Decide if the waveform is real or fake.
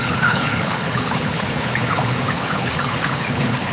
fake